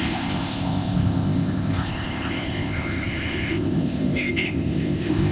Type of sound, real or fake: fake